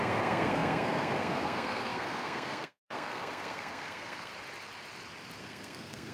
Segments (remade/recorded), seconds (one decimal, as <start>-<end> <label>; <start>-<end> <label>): 0.0-4.3 remade; 4.3-5.4 recorded; 5.4-6.1 remade

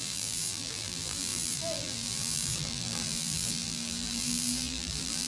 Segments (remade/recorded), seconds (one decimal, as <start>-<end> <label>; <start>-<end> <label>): 0.0-5.3 remade

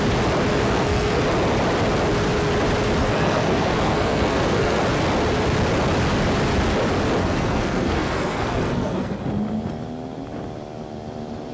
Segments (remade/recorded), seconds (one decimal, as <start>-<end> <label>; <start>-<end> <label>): 0.0-0.5 recorded; 0.5-1.2 remade; 1.2-3.0 recorded; 3.0-4.8 remade; 4.8-7.2 recorded; 7.2-9.2 remade; 9.2-11.5 recorded

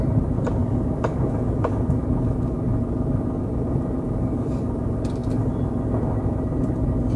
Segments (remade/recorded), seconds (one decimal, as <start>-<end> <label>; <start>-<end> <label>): 0.0-0.6 recorded; 0.6-1.3 remade; 1.3-7.2 recorded